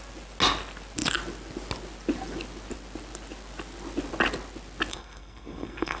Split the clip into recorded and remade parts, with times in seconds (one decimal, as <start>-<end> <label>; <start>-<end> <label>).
0.0-4.9 recorded; 4.9-6.0 remade